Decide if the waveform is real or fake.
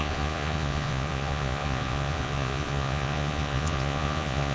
fake